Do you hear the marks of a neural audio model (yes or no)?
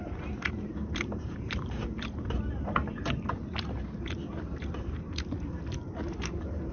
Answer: yes